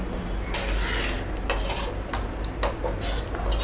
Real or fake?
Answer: real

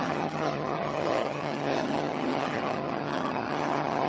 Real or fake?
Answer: fake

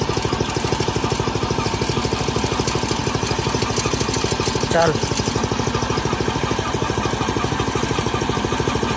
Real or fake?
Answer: real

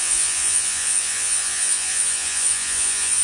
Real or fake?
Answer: fake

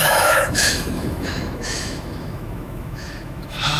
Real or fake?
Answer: fake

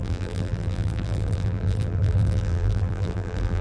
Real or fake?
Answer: fake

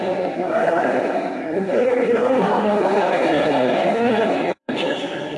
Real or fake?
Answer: fake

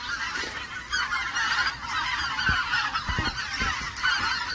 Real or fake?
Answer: fake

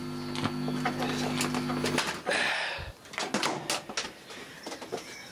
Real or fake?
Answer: real